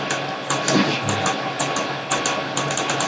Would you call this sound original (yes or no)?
yes